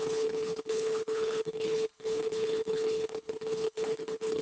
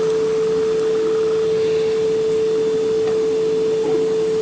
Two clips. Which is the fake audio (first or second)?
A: first